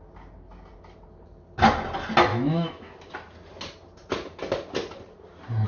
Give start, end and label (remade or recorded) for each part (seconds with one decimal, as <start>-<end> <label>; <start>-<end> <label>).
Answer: 0.0-2.3 recorded; 2.3-2.9 remade; 2.9-5.7 recorded